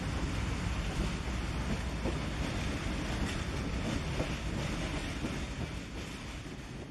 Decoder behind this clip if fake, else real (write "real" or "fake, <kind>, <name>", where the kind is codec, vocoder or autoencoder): real